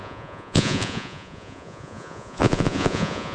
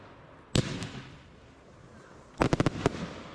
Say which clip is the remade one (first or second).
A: first